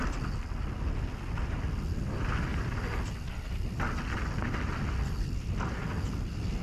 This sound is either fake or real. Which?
real